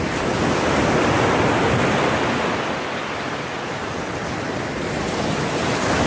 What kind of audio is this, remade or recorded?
recorded